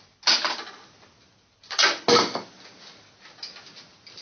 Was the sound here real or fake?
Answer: real